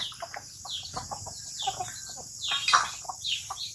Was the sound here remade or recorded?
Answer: recorded